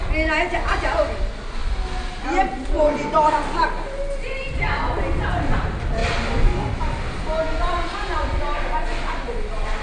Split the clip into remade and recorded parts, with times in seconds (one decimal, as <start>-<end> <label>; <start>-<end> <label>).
0.0-9.8 recorded